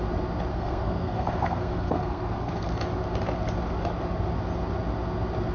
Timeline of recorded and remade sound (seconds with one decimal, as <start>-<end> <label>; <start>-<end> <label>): 0.0-0.5 recorded; 0.5-2.8 remade; 2.8-5.5 recorded